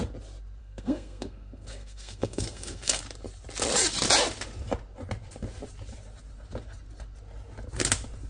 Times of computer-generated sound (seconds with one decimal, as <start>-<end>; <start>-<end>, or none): 0.6-3.0

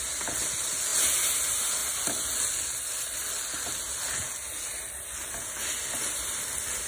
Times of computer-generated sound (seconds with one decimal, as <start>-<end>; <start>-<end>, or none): none

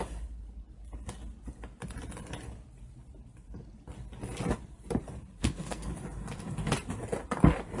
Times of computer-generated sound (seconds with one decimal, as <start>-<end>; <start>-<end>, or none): 5.4-5.9

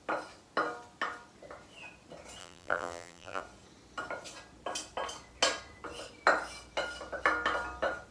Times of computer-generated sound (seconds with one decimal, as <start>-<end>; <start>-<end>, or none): 2.4-3.4

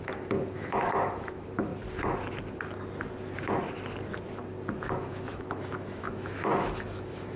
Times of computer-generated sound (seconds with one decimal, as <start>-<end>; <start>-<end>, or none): 0.0-1.7; 4.9-7.4

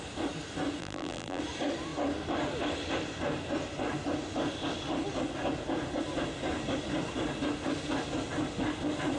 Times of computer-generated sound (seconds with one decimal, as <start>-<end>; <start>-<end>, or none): 0.8-1.4